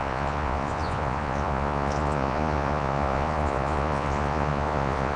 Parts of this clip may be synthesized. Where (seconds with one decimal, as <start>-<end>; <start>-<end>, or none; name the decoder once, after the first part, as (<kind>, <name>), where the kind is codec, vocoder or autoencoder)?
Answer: 0.0-5.2 (vocoder, Vocos)